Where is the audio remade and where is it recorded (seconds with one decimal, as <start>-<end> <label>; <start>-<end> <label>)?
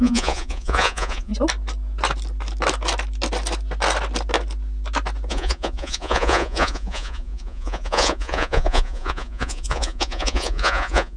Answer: 0.0-1.3 remade; 1.3-5.3 recorded; 5.3-11.2 remade